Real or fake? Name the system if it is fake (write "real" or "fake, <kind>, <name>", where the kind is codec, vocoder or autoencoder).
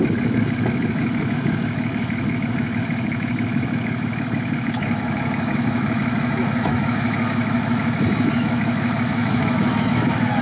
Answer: fake, autoencoder, DAC-VAE